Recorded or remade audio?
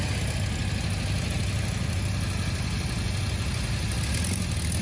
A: recorded